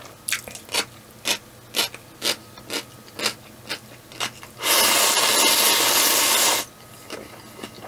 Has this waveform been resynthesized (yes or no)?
no